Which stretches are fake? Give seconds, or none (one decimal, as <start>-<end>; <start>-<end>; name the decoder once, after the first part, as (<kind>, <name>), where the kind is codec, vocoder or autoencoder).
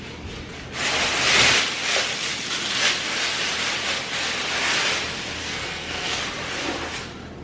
5.4-6.2 (codec, SNAC)